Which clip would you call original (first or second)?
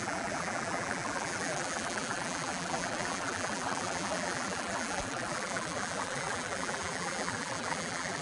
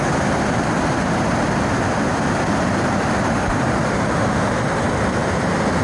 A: second